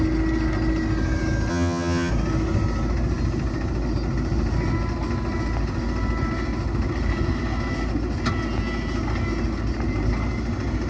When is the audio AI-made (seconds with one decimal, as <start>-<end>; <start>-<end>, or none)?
1.5-2.1